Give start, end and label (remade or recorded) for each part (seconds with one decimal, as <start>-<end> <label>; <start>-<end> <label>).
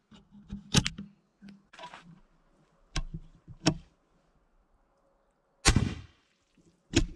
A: 0.0-1.3 recorded; 1.3-2.2 remade; 2.2-3.3 recorded; 3.3-3.9 remade; 3.9-7.2 recorded